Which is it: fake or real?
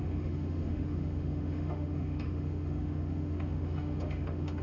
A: fake